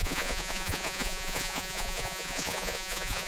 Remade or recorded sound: remade